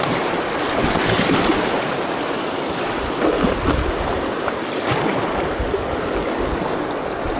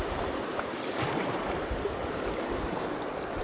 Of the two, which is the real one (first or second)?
first